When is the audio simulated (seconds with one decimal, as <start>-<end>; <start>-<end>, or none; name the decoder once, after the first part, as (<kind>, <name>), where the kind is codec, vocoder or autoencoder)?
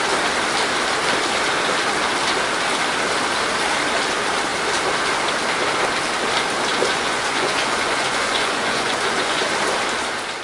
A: 6.7-9.4 (vocoder, Vocos)